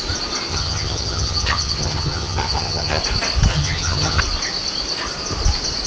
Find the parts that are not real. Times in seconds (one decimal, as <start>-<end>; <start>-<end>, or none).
0.5-3.0; 3.5-4.2